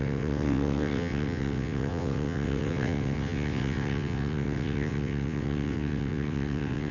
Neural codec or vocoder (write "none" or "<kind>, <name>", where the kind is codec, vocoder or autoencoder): vocoder, WaveNeXt